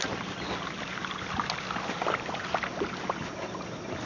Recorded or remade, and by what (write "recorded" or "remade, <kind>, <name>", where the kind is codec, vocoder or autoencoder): recorded